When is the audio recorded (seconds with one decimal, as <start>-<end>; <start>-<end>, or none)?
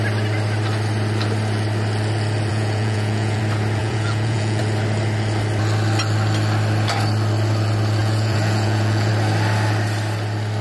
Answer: 0.0-2.5; 3.4-3.8; 4.6-8.0; 9.1-10.6